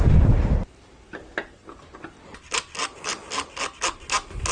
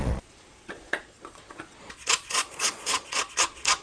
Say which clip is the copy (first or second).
second